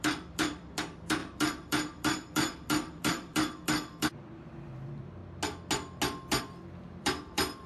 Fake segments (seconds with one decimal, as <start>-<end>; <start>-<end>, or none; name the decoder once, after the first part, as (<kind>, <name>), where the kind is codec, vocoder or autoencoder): 0.0-5.2 (vocoder, BigVGAN v2); 6.4-7.7